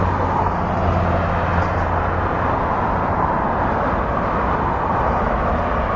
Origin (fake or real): real